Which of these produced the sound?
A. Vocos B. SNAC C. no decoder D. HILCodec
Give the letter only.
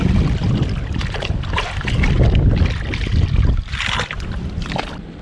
C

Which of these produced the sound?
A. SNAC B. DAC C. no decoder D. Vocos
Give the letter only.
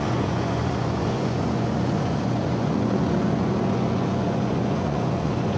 D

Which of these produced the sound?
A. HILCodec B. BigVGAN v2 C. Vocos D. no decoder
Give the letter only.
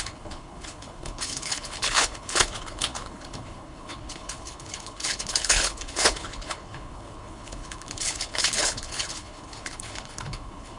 A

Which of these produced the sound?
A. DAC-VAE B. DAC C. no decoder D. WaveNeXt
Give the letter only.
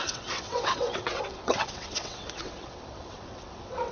D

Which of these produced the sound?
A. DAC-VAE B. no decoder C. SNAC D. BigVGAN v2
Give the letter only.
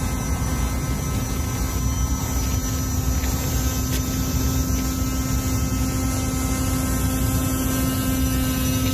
B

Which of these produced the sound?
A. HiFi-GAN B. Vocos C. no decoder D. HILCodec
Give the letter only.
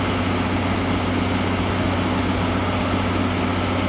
C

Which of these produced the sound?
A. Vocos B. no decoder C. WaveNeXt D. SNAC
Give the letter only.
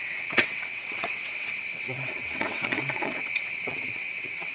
C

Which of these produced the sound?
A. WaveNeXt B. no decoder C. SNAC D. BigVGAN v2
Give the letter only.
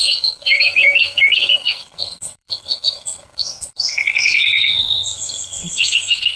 C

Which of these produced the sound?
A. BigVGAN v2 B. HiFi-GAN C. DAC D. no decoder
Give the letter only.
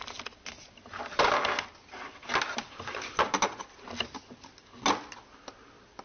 D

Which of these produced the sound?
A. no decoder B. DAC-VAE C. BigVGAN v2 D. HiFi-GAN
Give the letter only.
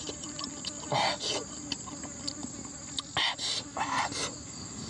A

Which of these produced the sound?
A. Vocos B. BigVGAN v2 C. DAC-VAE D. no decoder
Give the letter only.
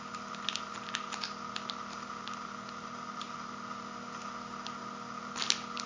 D